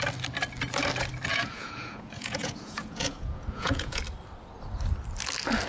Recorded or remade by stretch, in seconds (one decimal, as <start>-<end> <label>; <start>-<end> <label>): 0.0-1.3 recorded; 1.3-4.0 remade; 4.0-5.7 recorded

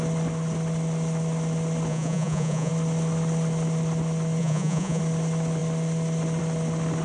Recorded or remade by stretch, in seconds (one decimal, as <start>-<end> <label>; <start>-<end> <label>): 0.0-1.9 recorded; 1.9-2.7 remade; 2.7-4.4 recorded; 4.4-5.0 remade; 5.0-7.0 recorded

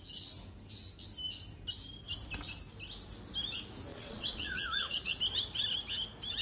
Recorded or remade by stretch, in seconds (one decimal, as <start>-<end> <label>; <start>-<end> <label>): 0.0-3.9 recorded; 3.9-5.2 remade; 5.2-6.4 recorded

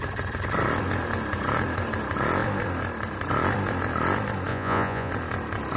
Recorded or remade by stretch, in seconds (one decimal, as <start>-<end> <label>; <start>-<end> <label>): 0.0-4.5 recorded; 4.5-5.1 remade; 5.1-5.8 recorded

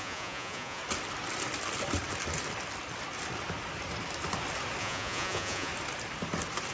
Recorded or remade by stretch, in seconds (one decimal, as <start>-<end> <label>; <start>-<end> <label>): 0.0-0.8 remade; 0.8-4.8 recorded; 4.8-5.7 remade; 5.7-6.7 recorded

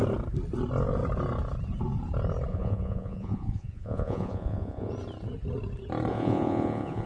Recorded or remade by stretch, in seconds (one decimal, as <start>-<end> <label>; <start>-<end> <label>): 0.0-2.5 recorded; 2.5-4.9 remade; 4.9-6.1 recorded; 6.1-7.1 remade